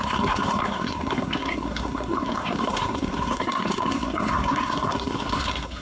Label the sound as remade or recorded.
remade